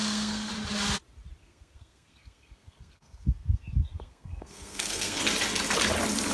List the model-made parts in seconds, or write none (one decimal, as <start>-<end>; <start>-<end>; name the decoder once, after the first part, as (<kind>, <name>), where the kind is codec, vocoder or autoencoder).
0.0-0.5 (codec, SNAC); 1.4-5.2